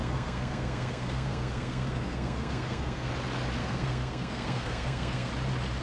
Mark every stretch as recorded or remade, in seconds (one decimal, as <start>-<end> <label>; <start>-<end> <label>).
0.0-3.1 remade; 3.1-3.6 recorded; 3.6-5.3 remade; 5.3-5.8 recorded